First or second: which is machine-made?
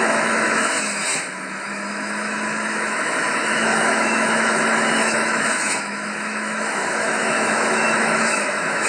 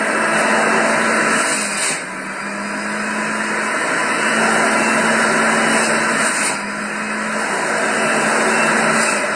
first